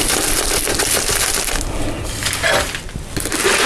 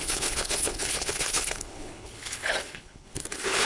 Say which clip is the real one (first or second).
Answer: first